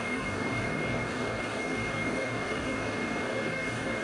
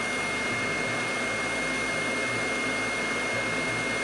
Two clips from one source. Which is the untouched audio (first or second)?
second